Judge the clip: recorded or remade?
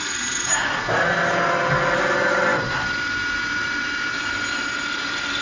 recorded